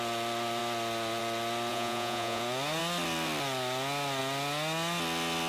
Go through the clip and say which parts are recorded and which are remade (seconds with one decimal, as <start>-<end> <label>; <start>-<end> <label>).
0.0-1.7 recorded; 1.7-2.4 remade; 2.4-5.5 recorded